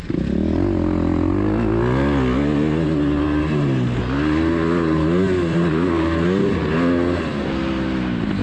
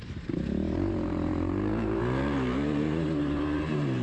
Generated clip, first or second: second